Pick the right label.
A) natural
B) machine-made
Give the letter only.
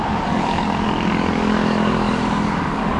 B